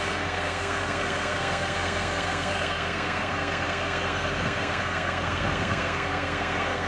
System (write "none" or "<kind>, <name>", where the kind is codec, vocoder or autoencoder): codec, SNAC